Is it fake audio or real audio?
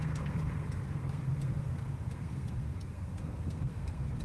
fake